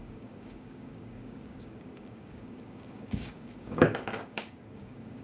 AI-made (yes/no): yes